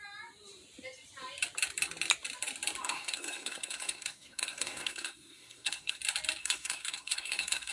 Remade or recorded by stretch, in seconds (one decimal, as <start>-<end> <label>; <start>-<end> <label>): 0.0-2.8 recorded; 2.8-6.0 remade; 6.0-6.4 recorded; 6.4-7.7 remade